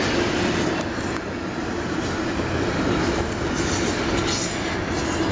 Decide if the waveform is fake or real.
real